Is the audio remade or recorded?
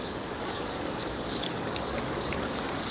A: remade